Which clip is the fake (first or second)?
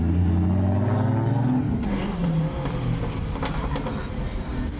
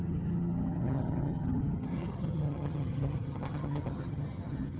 second